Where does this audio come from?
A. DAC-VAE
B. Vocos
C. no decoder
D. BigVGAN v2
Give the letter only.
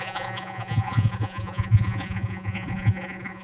B